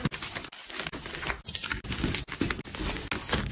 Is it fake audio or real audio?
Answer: real